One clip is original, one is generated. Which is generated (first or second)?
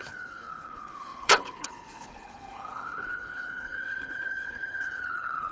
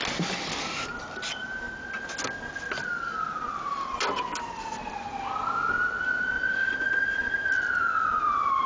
first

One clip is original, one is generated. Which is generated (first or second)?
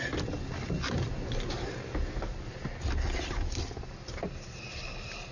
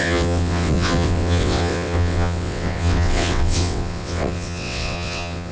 second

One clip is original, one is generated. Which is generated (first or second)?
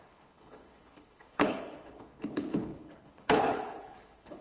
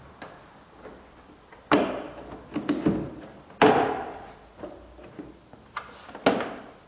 first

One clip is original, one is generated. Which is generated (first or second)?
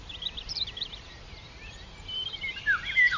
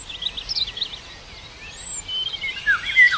first